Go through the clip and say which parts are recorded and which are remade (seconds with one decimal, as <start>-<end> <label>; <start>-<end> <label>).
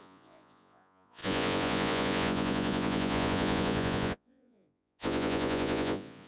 0.0-6.3 remade